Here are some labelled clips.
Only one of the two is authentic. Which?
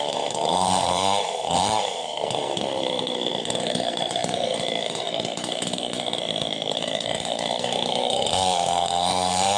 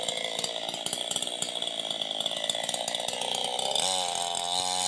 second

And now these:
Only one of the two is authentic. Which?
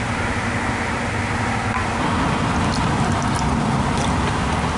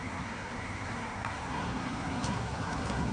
first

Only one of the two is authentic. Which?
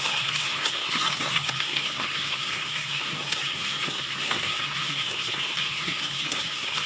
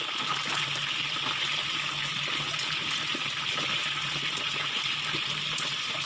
second